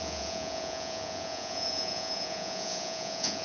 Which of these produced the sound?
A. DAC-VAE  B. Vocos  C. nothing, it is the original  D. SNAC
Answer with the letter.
B